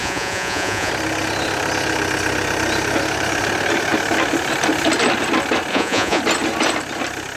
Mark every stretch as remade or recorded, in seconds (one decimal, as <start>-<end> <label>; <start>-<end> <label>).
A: 0.0-0.9 remade; 0.9-5.7 recorded; 5.7-6.2 remade; 6.2-7.4 recorded